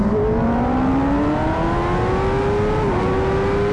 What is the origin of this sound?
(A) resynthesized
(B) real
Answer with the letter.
B